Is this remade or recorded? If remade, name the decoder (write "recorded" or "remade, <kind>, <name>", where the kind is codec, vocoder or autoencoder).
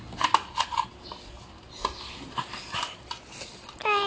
recorded